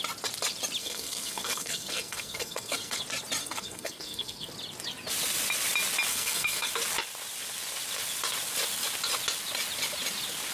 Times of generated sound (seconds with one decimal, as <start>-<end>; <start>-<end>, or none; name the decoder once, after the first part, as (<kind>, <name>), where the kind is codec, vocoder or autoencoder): 0.8-3.0 (codec, SNAC); 3.4-4.5; 6.1-6.7